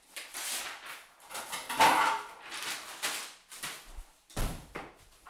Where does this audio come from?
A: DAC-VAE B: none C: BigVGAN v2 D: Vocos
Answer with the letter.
B